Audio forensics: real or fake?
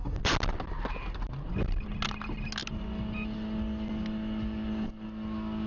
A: real